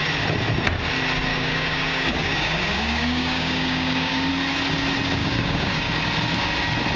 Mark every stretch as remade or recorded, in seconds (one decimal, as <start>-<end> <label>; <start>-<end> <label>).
0.0-1.3 recorded; 1.3-4.3 remade; 4.3-5.2 recorded; 5.2-5.9 remade; 5.9-7.0 recorded